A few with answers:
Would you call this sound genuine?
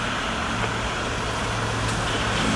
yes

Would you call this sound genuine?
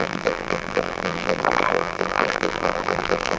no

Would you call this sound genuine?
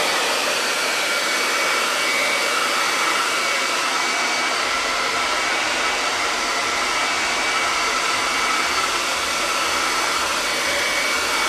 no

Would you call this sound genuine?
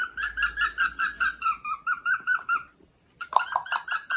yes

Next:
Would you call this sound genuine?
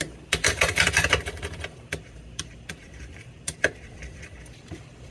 no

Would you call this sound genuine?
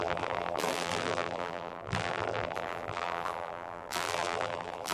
no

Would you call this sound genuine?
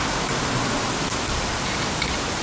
yes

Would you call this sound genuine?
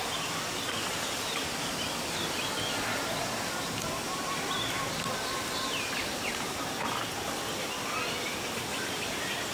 yes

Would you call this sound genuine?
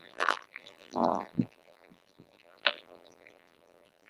no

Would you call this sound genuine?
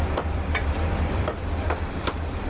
no